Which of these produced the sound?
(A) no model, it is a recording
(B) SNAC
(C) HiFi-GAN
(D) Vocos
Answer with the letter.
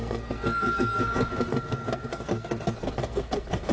B